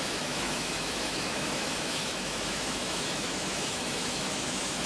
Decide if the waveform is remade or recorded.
remade